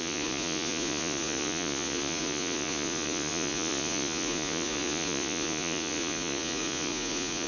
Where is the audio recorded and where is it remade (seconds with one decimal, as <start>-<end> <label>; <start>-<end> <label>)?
0.0-7.5 remade